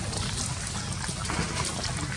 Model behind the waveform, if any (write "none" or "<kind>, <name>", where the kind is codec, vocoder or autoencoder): none